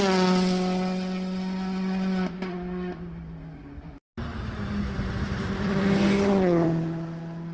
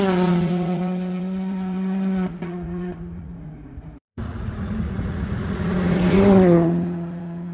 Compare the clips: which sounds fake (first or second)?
second